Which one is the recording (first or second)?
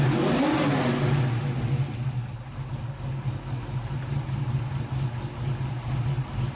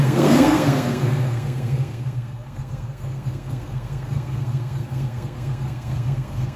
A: first